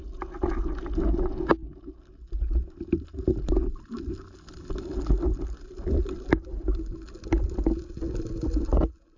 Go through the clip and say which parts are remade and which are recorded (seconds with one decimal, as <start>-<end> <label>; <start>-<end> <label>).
0.0-9.2 recorded